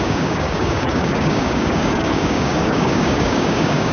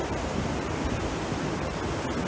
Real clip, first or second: second